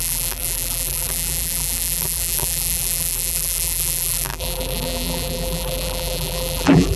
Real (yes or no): no